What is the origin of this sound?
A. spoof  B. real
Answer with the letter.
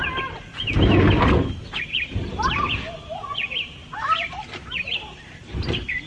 B